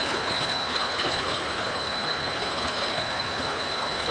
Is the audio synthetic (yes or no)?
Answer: yes